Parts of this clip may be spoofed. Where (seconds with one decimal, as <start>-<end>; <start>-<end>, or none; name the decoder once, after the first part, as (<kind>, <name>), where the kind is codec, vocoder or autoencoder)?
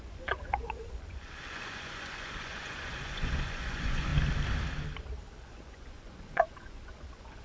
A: 0.0-4.1 (vocoder, Vocos); 5.4-7.4